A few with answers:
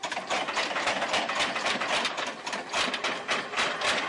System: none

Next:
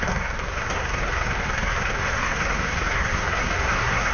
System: codec, SNAC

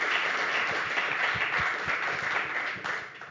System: none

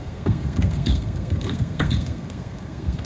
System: codec, SNAC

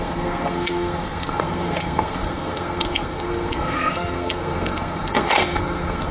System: codec, SNAC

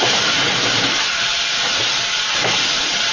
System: none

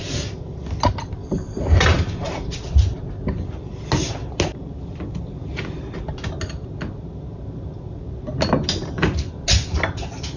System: none